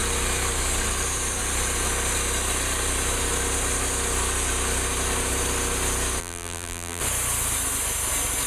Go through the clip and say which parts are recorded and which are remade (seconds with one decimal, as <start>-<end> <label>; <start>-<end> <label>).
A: 0.0-6.2 recorded; 6.2-7.0 remade; 7.0-8.5 recorded